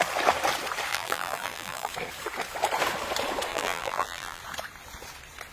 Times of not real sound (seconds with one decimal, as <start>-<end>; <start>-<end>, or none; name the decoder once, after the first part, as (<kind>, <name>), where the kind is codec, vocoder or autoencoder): 0.9-1.9 (vocoder, BigVGAN v2); 3.5-4.4